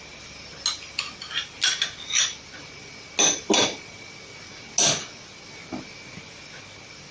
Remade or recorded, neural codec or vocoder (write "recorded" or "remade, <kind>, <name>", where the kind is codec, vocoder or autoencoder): recorded